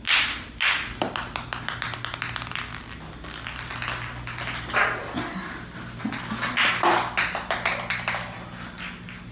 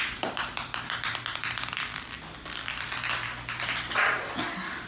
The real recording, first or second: first